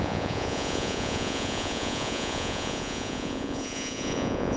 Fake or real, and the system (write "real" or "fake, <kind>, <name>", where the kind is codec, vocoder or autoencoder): fake, vocoder, Vocos